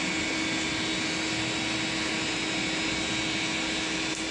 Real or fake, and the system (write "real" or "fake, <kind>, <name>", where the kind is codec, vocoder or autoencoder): real